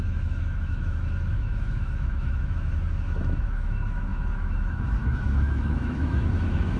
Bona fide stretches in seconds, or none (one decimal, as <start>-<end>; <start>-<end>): none